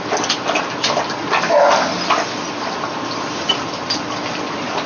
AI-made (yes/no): no